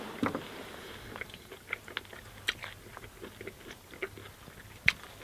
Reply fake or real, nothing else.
real